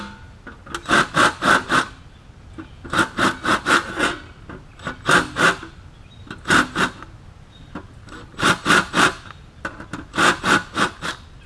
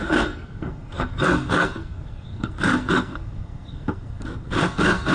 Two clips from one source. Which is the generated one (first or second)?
second